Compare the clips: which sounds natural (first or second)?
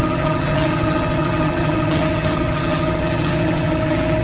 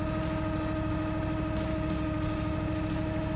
second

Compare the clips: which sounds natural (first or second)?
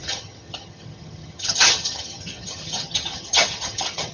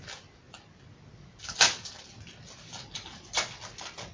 second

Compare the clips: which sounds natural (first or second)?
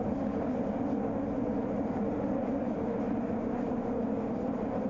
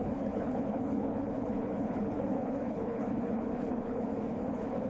first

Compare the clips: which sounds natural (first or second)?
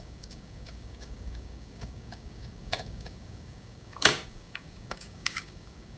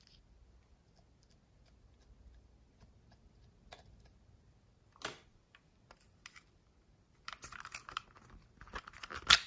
second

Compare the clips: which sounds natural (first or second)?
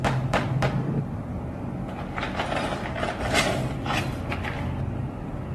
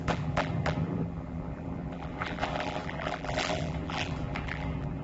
first